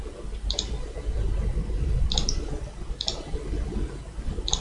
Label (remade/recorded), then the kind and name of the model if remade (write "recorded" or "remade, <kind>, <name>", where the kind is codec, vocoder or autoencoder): recorded